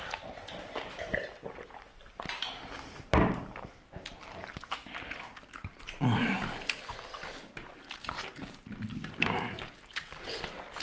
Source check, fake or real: real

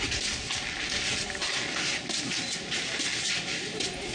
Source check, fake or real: real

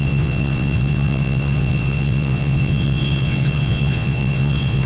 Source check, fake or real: fake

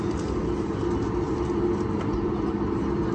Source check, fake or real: real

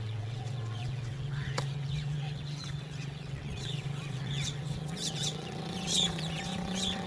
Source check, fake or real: fake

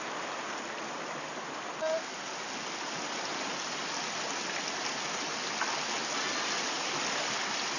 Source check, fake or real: real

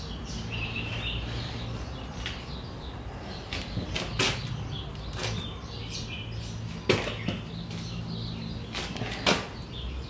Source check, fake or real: real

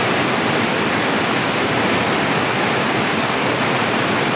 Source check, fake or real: real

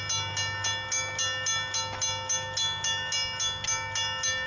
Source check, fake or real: real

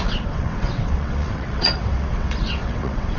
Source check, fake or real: fake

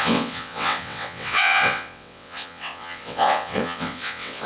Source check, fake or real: fake